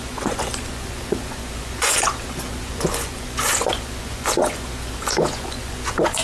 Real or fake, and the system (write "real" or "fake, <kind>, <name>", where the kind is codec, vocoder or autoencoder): fake, vocoder, Vocos